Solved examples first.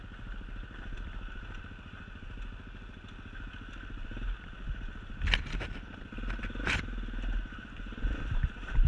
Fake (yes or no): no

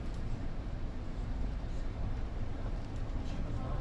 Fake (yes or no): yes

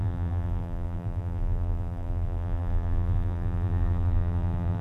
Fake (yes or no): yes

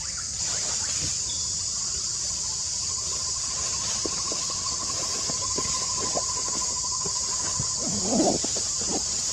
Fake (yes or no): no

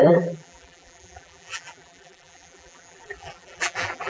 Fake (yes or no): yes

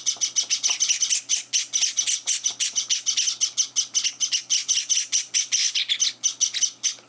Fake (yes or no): no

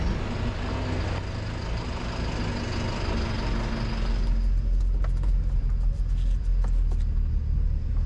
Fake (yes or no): no